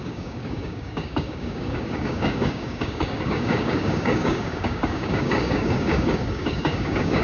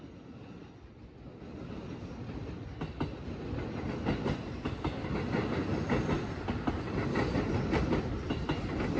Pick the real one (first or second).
second